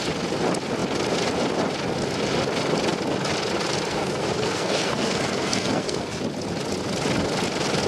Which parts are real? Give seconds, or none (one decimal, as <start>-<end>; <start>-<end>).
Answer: 0.0-3.9; 6.2-7.9